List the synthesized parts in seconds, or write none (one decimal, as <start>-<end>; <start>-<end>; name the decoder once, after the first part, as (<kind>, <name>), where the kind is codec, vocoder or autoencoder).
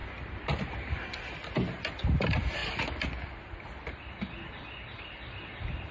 none